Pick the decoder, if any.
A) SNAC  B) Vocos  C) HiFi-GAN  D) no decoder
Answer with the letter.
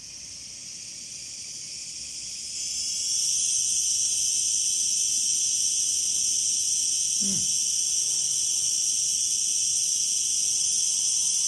D